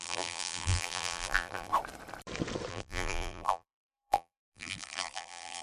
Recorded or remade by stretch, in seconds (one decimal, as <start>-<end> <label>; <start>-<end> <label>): 0.0-1.7 remade; 1.7-2.7 recorded; 2.7-5.6 remade

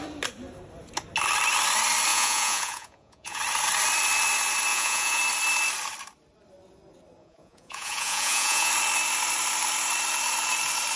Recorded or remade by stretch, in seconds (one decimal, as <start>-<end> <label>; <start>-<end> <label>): 0.0-2.1 recorded; 2.1-3.4 remade; 3.4-4.7 recorded; 4.7-5.2 remade; 5.2-7.2 recorded; 7.2-8.7 remade; 8.7-11.0 recorded

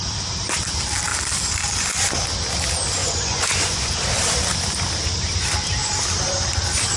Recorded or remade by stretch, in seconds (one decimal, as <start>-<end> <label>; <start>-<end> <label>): 0.0-3.0 recorded; 3.0-3.9 remade; 3.9-7.0 recorded

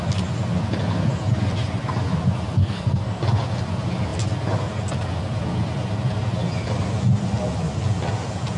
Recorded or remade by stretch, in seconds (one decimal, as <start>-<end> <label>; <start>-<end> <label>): 0.0-2.6 recorded; 2.6-3.2 remade; 3.2-8.6 recorded